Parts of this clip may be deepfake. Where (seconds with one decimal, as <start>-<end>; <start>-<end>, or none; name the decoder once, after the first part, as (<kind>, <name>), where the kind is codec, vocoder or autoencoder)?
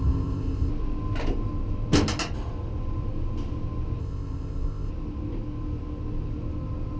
0.0-0.7 (codec, ZipCodec); 4.0-4.9